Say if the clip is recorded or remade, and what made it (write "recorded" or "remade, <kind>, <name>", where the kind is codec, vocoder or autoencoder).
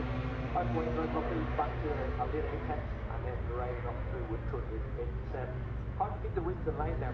recorded